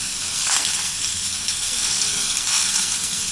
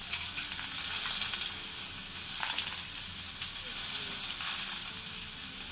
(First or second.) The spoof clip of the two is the first